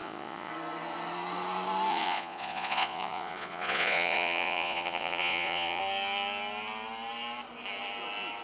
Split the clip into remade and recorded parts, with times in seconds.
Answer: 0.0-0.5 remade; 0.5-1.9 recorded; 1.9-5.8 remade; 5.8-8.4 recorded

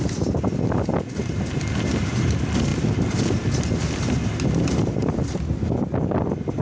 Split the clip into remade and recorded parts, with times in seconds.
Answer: 0.0-6.6 recorded

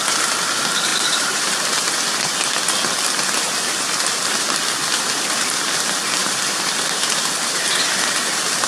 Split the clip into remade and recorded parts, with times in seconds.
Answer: 0.0-0.9 recorded; 0.9-1.5 remade; 1.5-6.2 recorded; 6.2-7.7 remade; 7.7-8.7 recorded

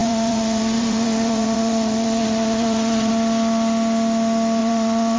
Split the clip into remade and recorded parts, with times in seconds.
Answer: 0.0-3.1 remade; 3.1-4.6 recorded; 4.6-5.2 remade

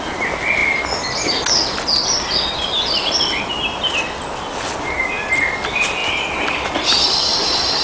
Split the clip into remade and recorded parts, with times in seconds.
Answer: 0.0-7.8 recorded

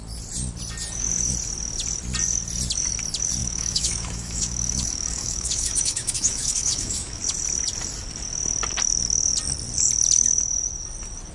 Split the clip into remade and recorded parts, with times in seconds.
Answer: 0.0-3.4 recorded; 3.4-7.2 remade; 7.2-11.3 recorded

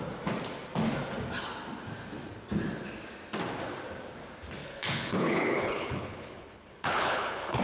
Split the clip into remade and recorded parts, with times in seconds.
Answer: 0.0-4.6 recorded; 4.6-7.6 remade

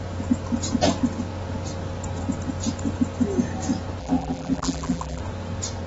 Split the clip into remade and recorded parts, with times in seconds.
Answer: 0.0-4.0 recorded; 4.0-5.2 remade; 5.2-5.9 recorded